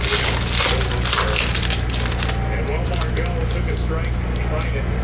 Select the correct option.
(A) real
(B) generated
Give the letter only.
A